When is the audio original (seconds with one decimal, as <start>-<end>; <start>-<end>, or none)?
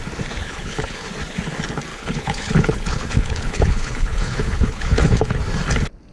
0.0-0.4; 1.1-1.9; 5.4-6.1